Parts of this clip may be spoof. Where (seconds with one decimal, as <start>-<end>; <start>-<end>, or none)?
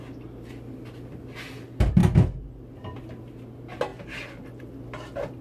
none